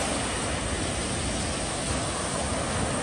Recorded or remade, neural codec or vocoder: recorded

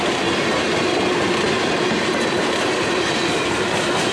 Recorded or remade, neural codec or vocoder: recorded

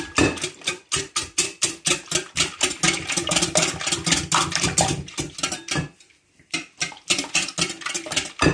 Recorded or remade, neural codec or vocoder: recorded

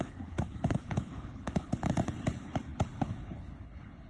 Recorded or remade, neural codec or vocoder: remade, codec, HILCodec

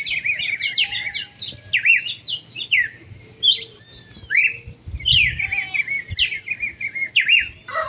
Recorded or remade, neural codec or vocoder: recorded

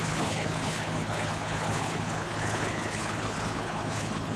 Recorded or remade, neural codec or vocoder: remade, codec, HILCodec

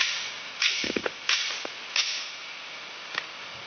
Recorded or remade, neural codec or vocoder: recorded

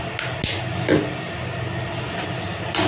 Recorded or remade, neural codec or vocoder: recorded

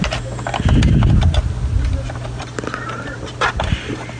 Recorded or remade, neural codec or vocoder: recorded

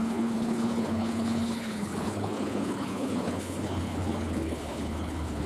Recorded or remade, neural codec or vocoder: remade, codec, HILCodec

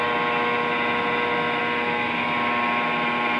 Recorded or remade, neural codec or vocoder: recorded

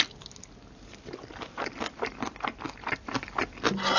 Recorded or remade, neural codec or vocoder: recorded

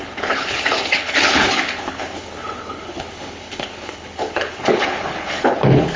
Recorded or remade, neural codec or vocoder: remade, codec, HILCodec